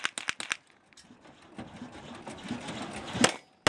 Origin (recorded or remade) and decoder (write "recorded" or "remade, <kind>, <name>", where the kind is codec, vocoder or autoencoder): recorded